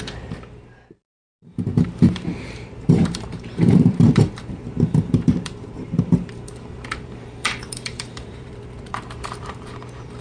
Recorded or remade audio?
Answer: remade